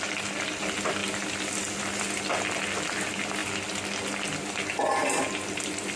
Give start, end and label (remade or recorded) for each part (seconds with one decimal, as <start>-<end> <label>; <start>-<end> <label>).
0.0-6.0 recorded